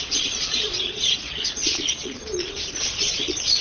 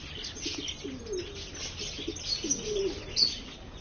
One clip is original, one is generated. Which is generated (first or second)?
first